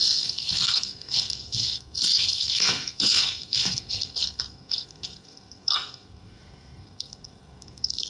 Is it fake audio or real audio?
fake